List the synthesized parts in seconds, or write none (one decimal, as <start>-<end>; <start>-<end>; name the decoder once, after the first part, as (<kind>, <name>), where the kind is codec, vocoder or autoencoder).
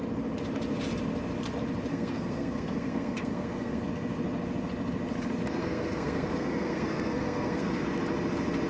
1.9-3.9 (codec, SNAC); 5.6-7.8